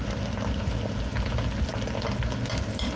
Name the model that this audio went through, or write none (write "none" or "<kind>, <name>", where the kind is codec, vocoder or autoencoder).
none